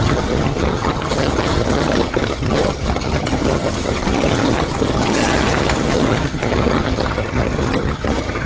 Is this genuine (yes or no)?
no